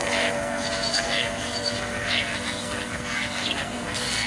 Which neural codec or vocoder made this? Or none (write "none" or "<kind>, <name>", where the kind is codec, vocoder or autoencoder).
codec, SNAC